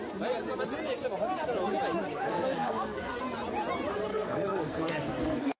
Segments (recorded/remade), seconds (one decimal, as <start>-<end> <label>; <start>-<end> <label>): 0.0-2.1 recorded; 2.1-3.2 remade; 3.2-4.1 recorded; 4.1-5.6 remade